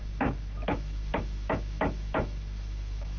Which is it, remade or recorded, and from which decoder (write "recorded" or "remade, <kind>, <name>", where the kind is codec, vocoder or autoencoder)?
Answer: remade, autoencoder, DAC-VAE